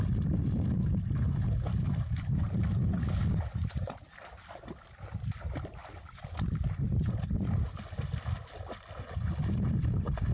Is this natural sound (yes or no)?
yes